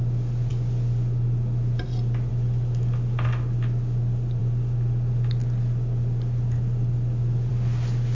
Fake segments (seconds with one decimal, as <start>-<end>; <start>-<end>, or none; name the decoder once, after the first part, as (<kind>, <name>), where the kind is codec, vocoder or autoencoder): none